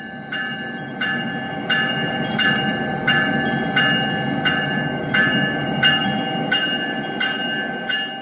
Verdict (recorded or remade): recorded